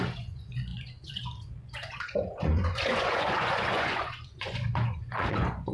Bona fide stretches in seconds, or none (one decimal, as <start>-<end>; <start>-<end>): none